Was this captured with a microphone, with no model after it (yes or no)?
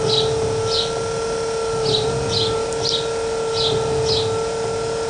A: yes